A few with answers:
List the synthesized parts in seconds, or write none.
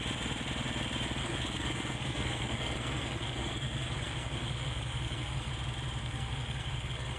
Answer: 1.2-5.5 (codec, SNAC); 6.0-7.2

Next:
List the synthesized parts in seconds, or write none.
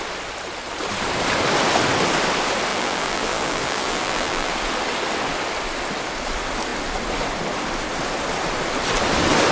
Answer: 2.7-4.5 (vocoder, BigVGAN v2)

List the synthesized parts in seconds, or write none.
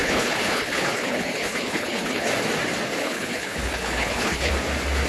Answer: 0.0-2.3 (codec, HILCodec); 3.0-4.5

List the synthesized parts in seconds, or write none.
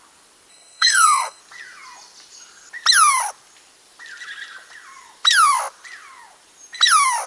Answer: 0.5-1.4 (codec, SNAC)